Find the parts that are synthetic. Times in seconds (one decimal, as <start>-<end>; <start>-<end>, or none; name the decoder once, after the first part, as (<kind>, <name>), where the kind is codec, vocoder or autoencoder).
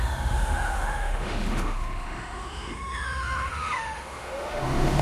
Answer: 0.0-5.0 (autoencoder, DAC-VAE)